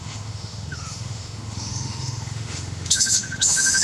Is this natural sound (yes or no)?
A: no